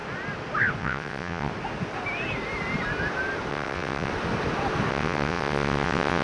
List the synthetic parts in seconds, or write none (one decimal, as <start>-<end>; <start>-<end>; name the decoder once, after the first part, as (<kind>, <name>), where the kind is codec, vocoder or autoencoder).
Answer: 0.8-1.5 (vocoder, WaveNeXt); 3.5-4.1; 4.9-6.2